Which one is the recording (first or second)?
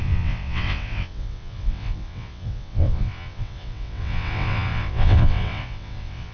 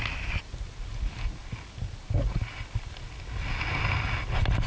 second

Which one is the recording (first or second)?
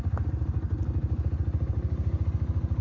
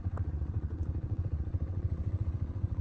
first